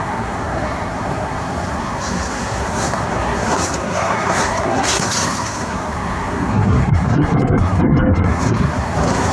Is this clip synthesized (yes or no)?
yes